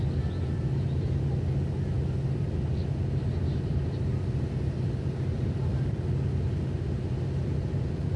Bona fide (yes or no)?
yes